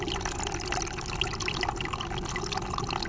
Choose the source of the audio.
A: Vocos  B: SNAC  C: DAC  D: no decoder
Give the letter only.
D